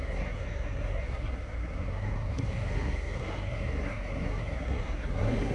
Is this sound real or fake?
fake